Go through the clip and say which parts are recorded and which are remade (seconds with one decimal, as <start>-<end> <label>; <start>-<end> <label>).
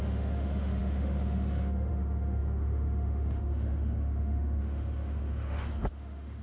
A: 0.0-6.4 remade